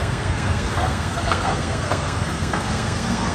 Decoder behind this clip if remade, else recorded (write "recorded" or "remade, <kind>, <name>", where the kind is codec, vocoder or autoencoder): remade, codec, SNAC